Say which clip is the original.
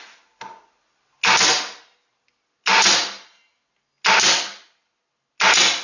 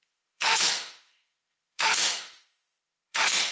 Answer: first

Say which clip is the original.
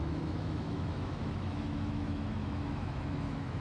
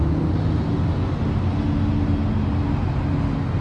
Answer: second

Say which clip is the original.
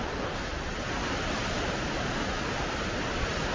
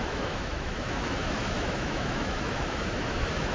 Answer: first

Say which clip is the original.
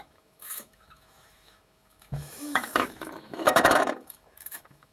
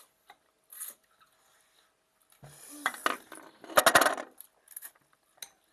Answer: second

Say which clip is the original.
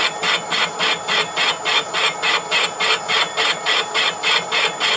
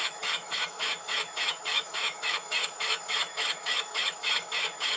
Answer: first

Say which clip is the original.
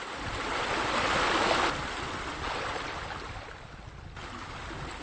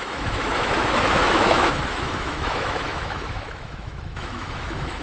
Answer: first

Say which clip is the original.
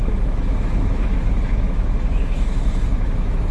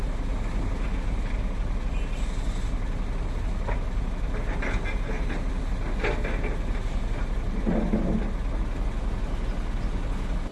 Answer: second